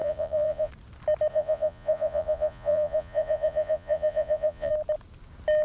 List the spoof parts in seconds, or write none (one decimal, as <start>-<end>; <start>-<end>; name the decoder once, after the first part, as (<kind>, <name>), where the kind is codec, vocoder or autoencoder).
0.0-0.7 (vocoder, Vocos); 1.3-4.7